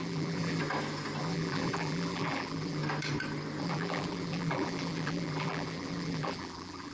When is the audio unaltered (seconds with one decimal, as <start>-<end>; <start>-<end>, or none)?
0.6-1.2; 2.8-3.6

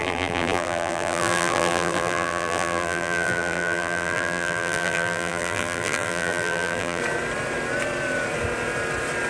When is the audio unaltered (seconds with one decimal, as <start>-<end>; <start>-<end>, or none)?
7.0-9.3

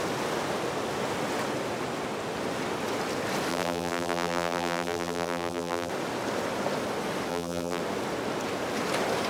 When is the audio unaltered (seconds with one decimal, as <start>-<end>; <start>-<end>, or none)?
0.0-3.5; 5.9-7.3; 7.8-9.3